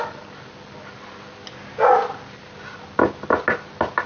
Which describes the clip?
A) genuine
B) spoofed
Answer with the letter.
A